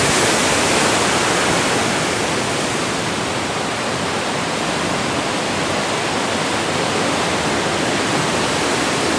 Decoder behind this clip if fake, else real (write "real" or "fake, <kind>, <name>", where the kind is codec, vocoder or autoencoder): real